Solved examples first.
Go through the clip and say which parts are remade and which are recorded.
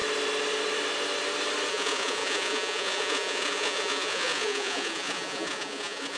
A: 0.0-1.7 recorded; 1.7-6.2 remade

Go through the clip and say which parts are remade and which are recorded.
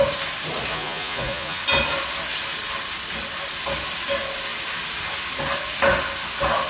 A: 0.0-0.7 recorded; 0.7-1.6 remade; 1.6-6.7 recorded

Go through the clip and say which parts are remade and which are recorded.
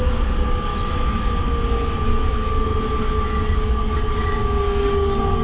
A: 0.0-0.7 remade; 0.7-2.3 recorded; 2.3-2.7 remade; 2.7-4.2 recorded; 4.2-5.4 remade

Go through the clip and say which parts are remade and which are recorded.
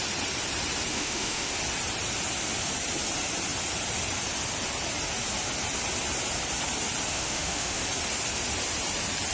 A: 0.0-0.9 recorded; 0.9-1.5 remade; 1.5-7.1 recorded; 7.1-7.8 remade; 7.8-9.3 recorded